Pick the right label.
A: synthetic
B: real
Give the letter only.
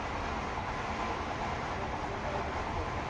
B